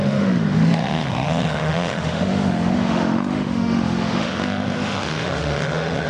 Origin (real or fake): fake